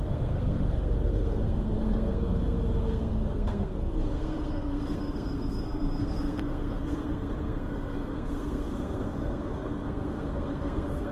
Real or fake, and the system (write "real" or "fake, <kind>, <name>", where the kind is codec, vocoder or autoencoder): fake, codec, SNAC